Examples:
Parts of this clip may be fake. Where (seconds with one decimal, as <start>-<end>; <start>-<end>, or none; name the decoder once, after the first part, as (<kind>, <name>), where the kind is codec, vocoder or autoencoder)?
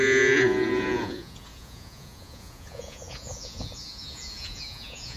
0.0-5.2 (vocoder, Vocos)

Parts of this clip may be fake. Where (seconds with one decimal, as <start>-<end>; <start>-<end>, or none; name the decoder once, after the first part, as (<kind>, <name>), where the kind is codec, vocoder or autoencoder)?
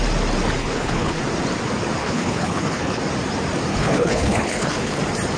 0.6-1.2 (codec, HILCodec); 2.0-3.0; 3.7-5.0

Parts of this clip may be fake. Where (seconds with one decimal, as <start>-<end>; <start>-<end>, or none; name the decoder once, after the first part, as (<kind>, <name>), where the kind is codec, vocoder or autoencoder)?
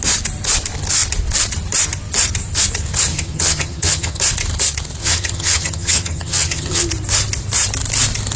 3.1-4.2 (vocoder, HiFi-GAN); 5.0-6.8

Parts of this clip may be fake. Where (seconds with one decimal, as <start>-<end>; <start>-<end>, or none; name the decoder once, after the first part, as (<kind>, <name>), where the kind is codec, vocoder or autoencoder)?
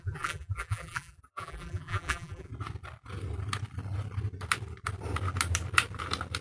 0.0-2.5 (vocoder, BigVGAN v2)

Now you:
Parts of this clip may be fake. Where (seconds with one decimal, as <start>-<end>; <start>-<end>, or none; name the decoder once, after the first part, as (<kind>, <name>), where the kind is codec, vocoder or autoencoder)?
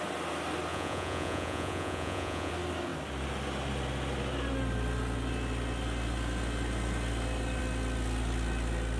0.7-2.5 (vocoder, Vocos)